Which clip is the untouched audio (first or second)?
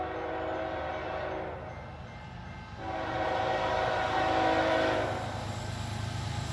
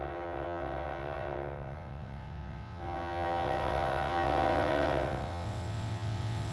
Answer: first